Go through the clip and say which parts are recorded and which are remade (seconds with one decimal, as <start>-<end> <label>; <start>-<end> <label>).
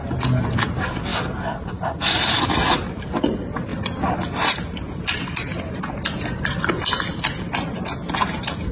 0.0-8.7 recorded